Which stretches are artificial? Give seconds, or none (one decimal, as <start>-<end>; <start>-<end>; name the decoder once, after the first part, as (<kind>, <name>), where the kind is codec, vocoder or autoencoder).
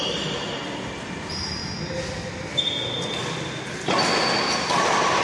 0.0-1.6 (vocoder, BigVGAN v2); 4.7-5.2